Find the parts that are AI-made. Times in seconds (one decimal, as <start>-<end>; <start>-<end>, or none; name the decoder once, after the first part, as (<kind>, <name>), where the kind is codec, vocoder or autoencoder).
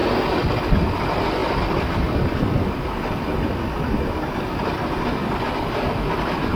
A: none